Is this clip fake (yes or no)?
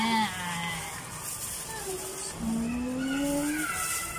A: no